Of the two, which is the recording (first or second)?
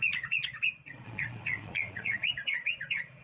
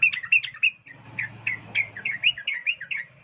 second